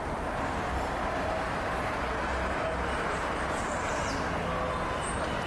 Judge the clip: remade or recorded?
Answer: recorded